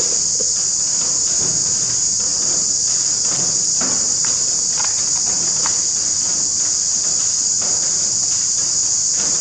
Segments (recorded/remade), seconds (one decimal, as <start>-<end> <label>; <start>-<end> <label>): 0.0-9.4 recorded